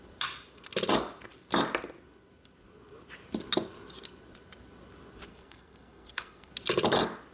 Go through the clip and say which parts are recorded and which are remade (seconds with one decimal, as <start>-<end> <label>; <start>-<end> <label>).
0.0-5.3 recorded; 5.3-6.5 remade; 6.5-7.3 recorded